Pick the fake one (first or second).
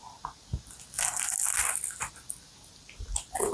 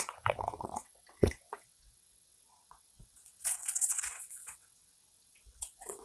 second